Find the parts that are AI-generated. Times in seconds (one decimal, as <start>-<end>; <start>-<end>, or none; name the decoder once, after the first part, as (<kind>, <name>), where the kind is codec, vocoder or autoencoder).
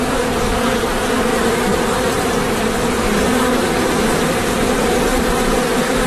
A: 0.0-6.1 (vocoder, BigVGAN v2)